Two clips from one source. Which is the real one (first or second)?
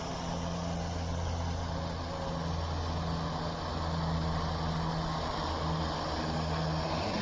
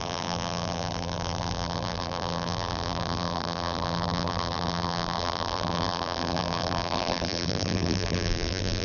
first